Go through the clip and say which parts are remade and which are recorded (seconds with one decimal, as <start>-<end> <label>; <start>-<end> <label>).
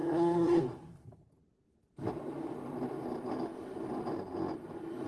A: 0.0-0.6 remade; 0.6-5.1 recorded